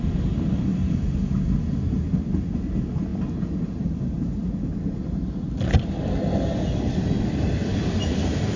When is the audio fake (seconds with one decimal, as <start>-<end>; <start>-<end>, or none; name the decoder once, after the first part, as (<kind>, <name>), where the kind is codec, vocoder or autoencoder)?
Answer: 0.7-1.4 (vocoder, BigVGAN v2)